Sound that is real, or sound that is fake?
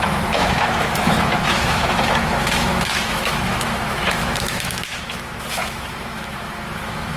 fake